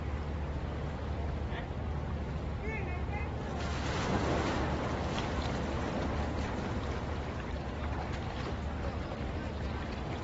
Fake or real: real